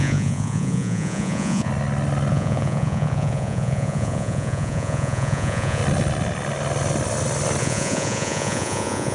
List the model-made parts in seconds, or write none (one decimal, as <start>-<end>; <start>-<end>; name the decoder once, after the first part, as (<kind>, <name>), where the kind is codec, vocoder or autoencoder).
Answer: 0.0-1.7 (vocoder, Vocos); 2.3-5.8; 7.6-9.1